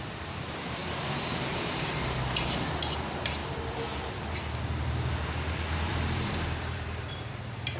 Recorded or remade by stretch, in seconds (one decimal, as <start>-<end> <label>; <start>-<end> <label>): 0.0-0.8 remade; 0.8-1.4 recorded; 1.4-3.4 remade; 3.4-5.9 recorded; 5.9-7.8 remade